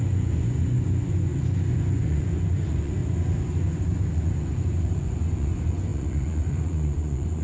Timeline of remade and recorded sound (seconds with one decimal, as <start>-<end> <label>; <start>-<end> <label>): 0.0-3.0 remade; 3.0-3.6 recorded; 3.6-7.4 remade